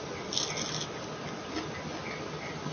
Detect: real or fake real